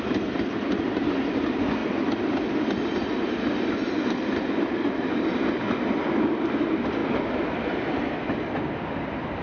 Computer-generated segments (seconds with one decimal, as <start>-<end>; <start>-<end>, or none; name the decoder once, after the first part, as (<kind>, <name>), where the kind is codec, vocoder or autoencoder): none